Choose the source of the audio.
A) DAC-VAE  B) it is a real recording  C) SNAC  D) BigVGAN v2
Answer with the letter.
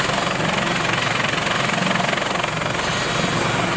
B